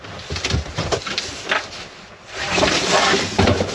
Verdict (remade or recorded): remade